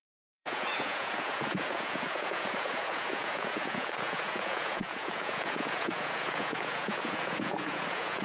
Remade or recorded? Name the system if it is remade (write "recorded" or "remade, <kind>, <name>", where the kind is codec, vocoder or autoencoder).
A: remade, vocoder, Vocos